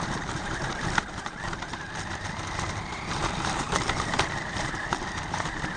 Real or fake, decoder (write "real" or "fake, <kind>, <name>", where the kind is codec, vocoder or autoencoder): fake, vocoder, BigVGAN v2